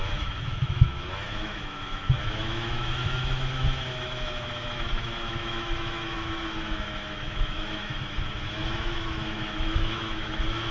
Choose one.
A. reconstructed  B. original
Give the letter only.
A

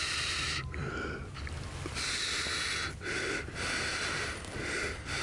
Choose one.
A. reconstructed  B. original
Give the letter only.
B